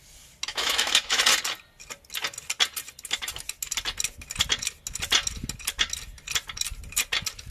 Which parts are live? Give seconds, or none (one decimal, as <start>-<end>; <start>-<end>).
0.0-0.5; 1.2-7.5